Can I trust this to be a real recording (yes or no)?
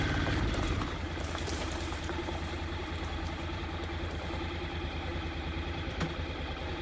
no